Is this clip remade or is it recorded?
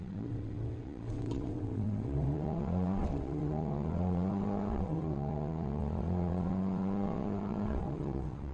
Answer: remade